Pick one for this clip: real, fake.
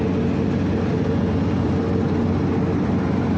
real